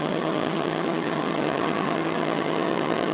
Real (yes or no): no